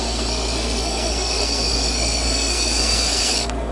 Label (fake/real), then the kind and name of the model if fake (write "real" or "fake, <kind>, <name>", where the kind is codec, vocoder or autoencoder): fake, codec, SNAC